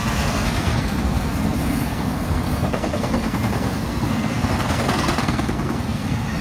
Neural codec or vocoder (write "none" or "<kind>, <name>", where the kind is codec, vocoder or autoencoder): codec, SNAC